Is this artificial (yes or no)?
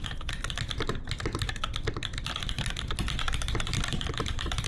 no